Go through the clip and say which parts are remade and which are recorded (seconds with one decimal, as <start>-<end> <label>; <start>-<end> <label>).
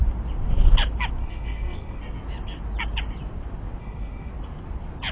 0.0-1.2 recorded; 1.2-2.0 remade; 2.0-3.8 recorded; 3.8-4.3 remade; 4.3-5.1 recorded